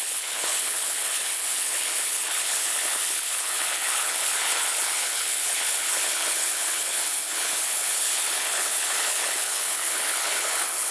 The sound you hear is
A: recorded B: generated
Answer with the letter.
B